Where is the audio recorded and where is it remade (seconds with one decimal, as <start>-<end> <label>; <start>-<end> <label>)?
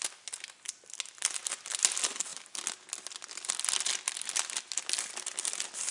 0.0-5.9 recorded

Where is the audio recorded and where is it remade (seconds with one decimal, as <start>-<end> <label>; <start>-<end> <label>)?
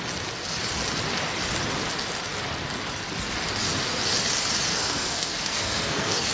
0.0-4.7 recorded; 4.7-6.3 remade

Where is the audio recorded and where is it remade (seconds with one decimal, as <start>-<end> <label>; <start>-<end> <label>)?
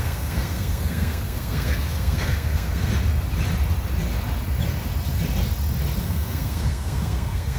0.0-2.9 remade; 2.9-6.0 recorded; 6.0-7.6 remade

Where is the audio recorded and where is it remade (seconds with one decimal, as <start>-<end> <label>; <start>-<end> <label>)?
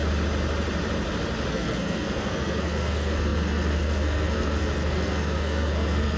0.0-1.5 recorded; 1.5-6.2 remade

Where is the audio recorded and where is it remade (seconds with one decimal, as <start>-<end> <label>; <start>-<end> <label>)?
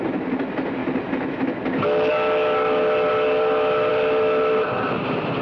0.0-5.4 recorded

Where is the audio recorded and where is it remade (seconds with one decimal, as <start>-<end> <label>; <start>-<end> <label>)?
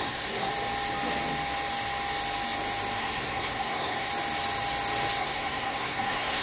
0.0-0.5 remade; 0.5-3.0 recorded; 3.0-4.1 remade; 4.1-5.2 recorded; 5.2-6.4 remade